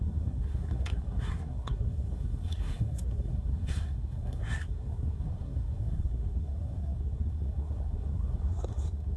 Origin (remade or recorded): remade